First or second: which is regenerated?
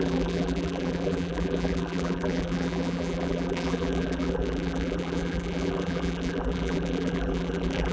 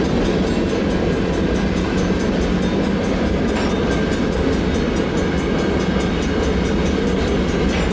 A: first